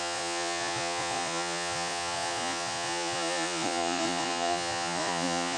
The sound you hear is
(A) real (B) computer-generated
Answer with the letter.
B